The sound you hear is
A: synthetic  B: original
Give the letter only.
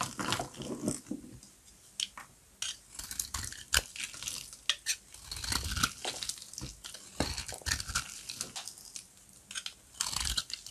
B